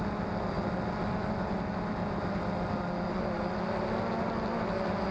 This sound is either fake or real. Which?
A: real